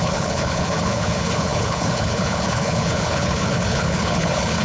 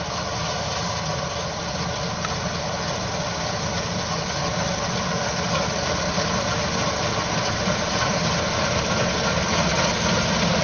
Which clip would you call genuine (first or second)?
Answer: second